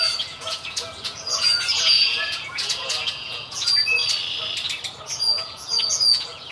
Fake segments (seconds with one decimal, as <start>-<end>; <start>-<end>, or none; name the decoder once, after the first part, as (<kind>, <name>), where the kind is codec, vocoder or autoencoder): 0.0-4.0 (vocoder, Vocos); 5.0-6.5